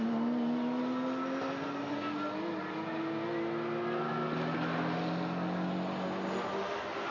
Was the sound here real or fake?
real